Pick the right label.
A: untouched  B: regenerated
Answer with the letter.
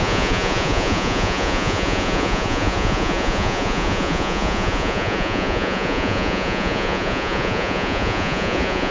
B